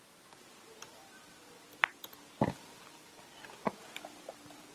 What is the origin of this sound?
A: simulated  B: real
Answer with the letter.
A